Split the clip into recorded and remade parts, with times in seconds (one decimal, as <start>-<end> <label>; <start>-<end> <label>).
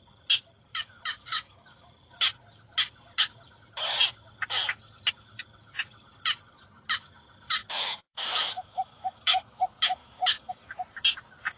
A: 0.0-0.7 recorded; 0.7-1.6 remade; 1.6-7.6 recorded; 7.6-9.6 remade; 9.6-10.0 recorded; 10.0-10.5 remade; 10.5-11.6 recorded